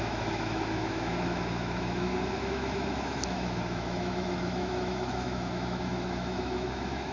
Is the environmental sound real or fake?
fake